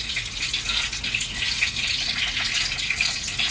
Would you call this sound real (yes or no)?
no